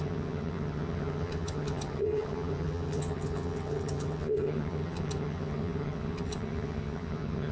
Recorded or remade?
remade